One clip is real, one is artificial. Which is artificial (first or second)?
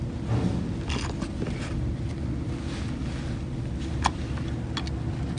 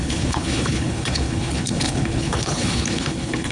second